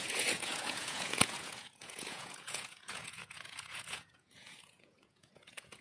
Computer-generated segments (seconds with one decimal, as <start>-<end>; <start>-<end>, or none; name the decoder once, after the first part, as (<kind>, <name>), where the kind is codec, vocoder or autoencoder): 0.0-5.8 (vocoder, Vocos)